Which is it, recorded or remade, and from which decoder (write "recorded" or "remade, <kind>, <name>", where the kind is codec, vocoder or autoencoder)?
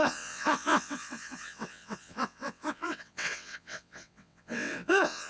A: remade, vocoder, WaveNeXt